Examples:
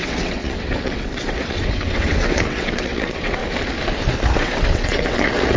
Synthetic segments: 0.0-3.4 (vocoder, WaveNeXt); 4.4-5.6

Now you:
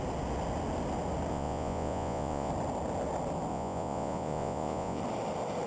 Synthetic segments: 1.3-2.5 (vocoder, Vocos); 3.5-5.0

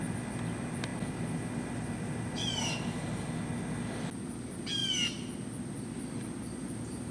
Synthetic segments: none

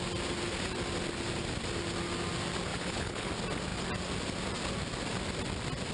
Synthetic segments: 2.7-3.3 (codec, HILCodec)

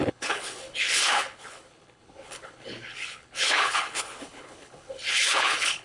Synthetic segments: 0.0-5.8 (codec, HILCodec)